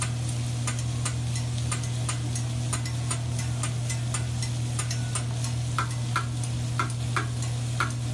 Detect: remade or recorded recorded